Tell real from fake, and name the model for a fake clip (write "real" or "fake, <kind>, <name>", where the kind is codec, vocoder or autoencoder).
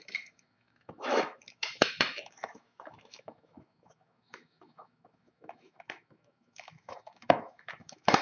fake, autoencoder, DAC-VAE